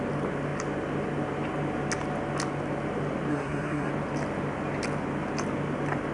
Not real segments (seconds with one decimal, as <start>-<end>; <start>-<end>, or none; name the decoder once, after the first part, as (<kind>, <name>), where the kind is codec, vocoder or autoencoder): 3.3-3.9 (codec, SNAC)